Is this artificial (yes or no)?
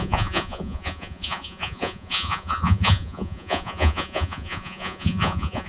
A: yes